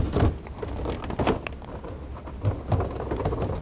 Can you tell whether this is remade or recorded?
recorded